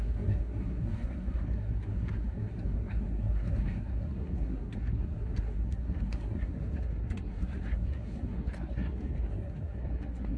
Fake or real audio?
fake